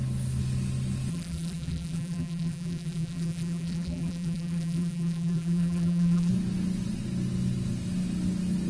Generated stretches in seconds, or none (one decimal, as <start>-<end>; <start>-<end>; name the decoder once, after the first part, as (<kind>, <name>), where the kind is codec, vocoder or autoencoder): 1.1-6.3 (vocoder, BigVGAN v2)